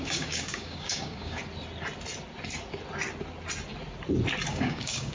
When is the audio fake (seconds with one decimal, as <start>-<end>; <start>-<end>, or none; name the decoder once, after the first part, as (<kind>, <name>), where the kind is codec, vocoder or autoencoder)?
0.0-1.4 (codec, DAC); 4.5-5.1